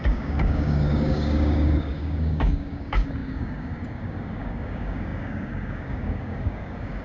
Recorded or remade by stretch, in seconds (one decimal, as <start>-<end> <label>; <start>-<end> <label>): 0.0-7.0 remade